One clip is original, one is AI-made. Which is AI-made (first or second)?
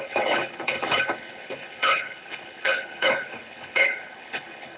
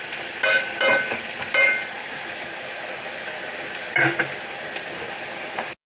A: first